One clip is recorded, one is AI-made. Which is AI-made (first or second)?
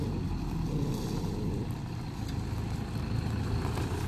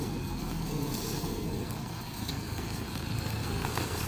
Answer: second